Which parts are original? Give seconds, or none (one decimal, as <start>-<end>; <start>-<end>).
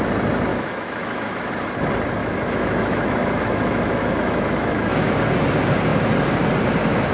0.0-0.5; 1.5-2.2; 5.1-7.1